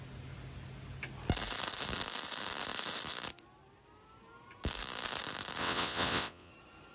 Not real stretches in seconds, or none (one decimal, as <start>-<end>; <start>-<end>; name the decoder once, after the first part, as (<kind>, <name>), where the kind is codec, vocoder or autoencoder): 5.6-6.5 (vocoder, WaveNeXt)